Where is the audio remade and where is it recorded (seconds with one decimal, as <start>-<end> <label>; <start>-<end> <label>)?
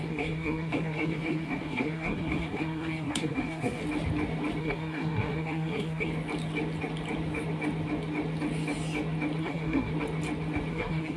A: 0.0-3.8 remade; 3.8-4.6 recorded; 4.6-6.1 remade; 6.1-9.4 recorded; 9.4-9.9 remade; 9.9-10.7 recorded; 10.7-11.2 remade